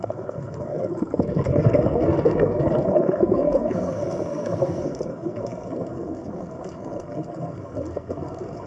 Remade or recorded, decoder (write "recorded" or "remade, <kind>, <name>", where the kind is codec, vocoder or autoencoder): remade, codec, SNAC